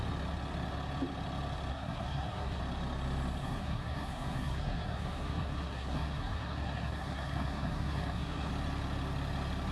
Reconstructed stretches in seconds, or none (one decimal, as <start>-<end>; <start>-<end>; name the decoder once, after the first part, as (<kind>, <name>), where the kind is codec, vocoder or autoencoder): 1.7-2.6 (codec, SNAC); 3.4-8.5